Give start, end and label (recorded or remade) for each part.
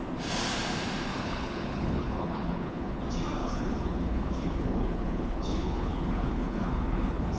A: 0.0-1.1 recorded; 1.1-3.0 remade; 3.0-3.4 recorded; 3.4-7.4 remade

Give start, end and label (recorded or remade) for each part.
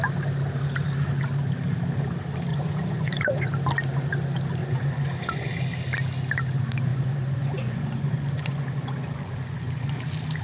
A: 0.0-2.5 recorded; 2.5-3.5 remade; 3.5-4.6 recorded; 4.6-5.5 remade; 5.5-6.9 recorded; 6.9-9.9 remade; 9.9-10.4 recorded